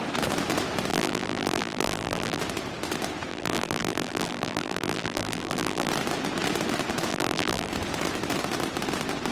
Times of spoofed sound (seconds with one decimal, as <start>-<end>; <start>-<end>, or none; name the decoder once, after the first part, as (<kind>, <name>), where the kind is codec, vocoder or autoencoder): 0.9-2.4 (vocoder, BigVGAN v2); 3.3-5.9; 7.1-7.7